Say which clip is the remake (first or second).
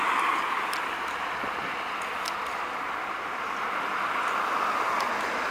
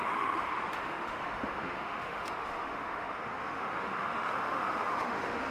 second